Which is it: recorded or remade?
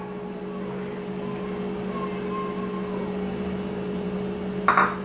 recorded